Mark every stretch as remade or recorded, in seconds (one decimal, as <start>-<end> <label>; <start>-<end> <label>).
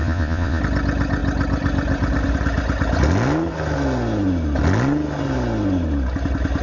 0.0-0.6 remade; 0.6-6.6 recorded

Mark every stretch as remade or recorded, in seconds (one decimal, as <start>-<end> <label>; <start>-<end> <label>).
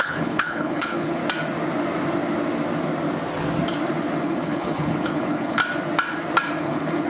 0.0-1.2 remade; 1.2-4.2 recorded; 4.2-5.6 remade; 5.6-6.6 recorded; 6.6-7.1 remade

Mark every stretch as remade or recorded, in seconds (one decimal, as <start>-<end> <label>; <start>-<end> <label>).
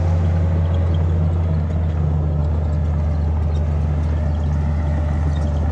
0.0-5.7 recorded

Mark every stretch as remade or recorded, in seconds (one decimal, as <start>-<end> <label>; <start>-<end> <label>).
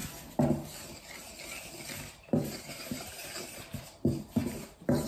0.0-2.1 recorded; 2.1-5.1 remade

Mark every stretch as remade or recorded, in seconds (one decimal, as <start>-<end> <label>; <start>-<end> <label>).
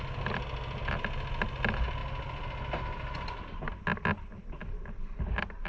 0.0-5.7 recorded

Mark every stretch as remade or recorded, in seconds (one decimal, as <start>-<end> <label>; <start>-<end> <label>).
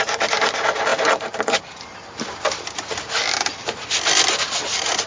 0.0-3.2 recorded; 3.2-4.5 remade; 4.5-5.1 recorded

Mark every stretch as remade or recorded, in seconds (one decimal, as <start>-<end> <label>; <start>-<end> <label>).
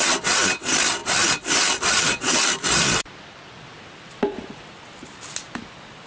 0.0-1.0 recorded; 1.0-4.7 remade; 4.7-6.1 recorded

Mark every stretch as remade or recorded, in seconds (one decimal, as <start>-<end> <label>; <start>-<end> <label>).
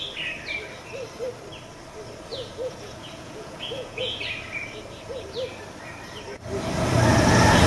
0.0-2.3 recorded; 2.3-4.2 remade; 4.2-7.7 recorded